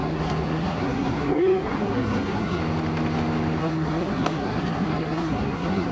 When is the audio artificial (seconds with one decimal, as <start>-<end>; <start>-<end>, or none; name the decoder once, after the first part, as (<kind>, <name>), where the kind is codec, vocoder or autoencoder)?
0.0-2.6 (codec, SNAC); 3.6-5.9